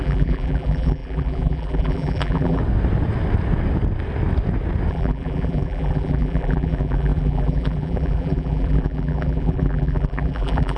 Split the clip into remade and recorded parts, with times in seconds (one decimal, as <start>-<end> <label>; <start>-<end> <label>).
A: 0.0-2.6 remade; 2.6-4.9 recorded; 4.9-10.8 remade